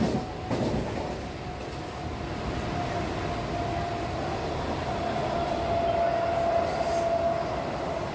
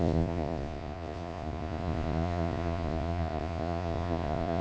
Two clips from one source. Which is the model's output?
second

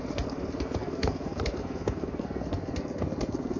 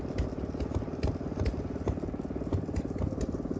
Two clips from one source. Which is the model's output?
first